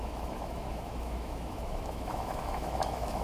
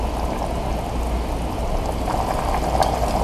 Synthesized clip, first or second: first